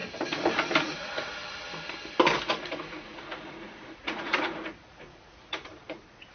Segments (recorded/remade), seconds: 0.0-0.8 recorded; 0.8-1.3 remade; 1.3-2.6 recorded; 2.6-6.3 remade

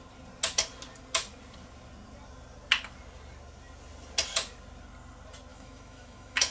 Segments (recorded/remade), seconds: 0.0-5.5 recorded; 5.5-6.5 remade

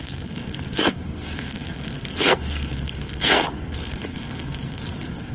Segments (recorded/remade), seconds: 0.0-5.3 remade

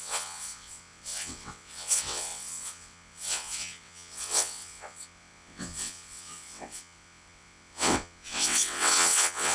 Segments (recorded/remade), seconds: 0.0-9.5 remade

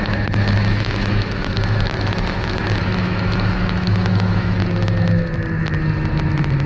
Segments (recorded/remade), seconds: 0.0-4.6 remade; 4.6-6.7 recorded

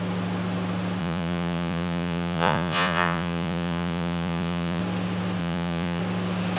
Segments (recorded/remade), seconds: 0.0-1.0 recorded; 1.0-4.8 remade; 4.8-5.4 recorded; 5.4-6.0 remade; 6.0-6.6 recorded